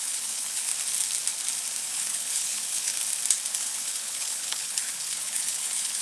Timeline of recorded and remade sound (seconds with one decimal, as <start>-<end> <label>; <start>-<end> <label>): 0.0-0.7 remade; 0.7-1.9 recorded; 1.9-2.9 remade; 2.9-3.5 recorded; 3.5-6.0 remade